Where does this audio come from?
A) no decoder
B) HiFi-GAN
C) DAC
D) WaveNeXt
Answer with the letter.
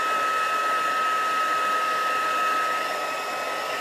A